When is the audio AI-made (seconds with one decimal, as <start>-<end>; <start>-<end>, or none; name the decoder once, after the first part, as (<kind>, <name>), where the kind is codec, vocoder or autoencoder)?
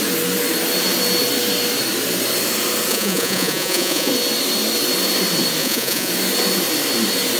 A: 2.9-4.1 (vocoder, Vocos); 5.6-6.1